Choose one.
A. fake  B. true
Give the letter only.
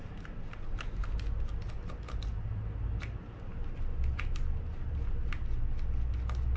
B